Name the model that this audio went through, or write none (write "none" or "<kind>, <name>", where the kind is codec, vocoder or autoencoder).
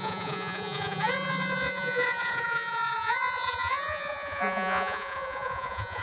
vocoder, Vocos